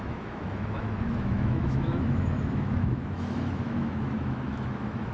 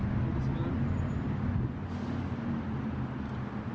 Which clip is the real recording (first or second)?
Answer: second